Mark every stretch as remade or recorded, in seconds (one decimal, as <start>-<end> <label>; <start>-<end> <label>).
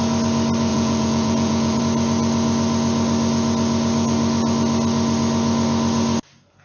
0.0-0.7 recorded; 0.7-1.8 remade; 1.8-6.6 recorded